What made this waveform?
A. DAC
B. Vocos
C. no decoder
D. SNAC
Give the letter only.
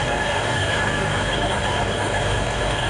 A